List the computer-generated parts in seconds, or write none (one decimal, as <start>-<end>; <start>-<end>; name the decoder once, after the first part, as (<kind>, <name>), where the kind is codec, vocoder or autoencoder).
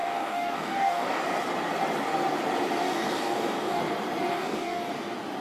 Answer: 0.0-1.2 (codec, DAC); 2.8-3.8; 4.3-4.9